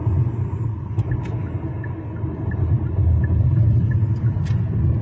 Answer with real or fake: real